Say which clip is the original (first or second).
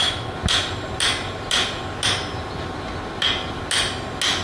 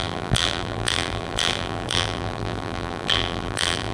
first